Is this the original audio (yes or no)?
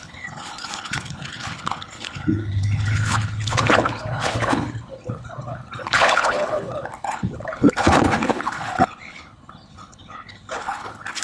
no